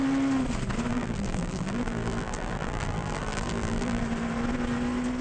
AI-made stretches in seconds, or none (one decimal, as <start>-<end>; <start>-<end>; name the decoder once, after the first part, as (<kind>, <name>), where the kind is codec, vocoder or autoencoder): 0.9-4.0 (vocoder, BigVGAN v2)